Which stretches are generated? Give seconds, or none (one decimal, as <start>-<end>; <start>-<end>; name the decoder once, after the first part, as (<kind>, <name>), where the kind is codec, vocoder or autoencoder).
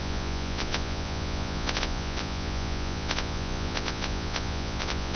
0.0-5.2 (vocoder, Vocos)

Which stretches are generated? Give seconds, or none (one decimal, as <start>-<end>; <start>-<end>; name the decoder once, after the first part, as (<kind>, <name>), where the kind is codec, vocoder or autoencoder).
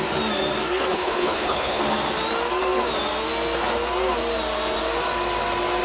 0.9-1.8 (codec, HILCodec)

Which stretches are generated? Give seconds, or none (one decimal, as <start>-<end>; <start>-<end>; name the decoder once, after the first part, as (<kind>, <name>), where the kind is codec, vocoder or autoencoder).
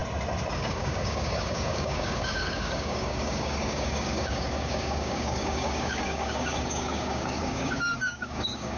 0.5-8.8 (codec, DAC)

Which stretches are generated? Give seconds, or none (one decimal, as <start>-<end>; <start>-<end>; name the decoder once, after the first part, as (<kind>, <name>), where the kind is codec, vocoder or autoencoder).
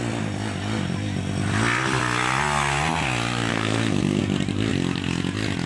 3.5-4.2 (codec, SNAC)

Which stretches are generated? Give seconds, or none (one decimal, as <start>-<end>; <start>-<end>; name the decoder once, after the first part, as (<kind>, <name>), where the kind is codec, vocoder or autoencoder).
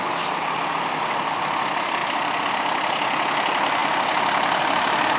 2.0-2.5 (vocoder, BigVGAN v2); 3.8-4.6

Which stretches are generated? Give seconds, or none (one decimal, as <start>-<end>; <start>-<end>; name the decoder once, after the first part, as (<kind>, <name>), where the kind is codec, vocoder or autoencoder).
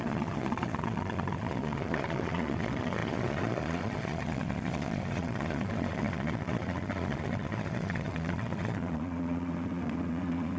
0.0-10.6 (vocoder, Vocos)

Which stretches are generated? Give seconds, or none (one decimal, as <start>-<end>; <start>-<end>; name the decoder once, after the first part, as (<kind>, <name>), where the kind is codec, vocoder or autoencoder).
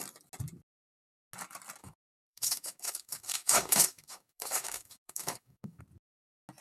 1.8-5.8 (codec, DAC)